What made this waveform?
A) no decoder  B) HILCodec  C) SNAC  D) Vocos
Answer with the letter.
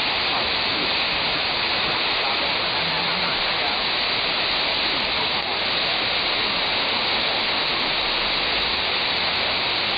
A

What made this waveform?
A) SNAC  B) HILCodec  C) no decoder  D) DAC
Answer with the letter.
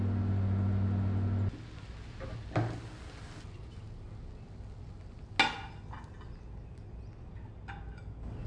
C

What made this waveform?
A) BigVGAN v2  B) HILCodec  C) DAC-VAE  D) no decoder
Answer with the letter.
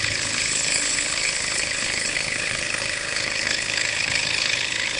B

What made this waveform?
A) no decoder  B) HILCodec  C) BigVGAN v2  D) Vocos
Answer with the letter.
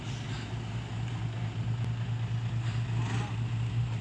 A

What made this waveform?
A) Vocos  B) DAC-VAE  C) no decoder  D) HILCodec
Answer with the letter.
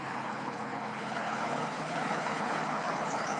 D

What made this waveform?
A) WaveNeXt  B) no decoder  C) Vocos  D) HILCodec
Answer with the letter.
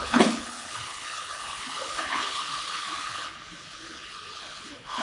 D